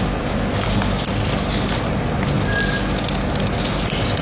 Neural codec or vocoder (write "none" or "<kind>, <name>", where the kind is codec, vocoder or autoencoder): none